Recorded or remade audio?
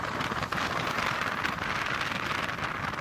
recorded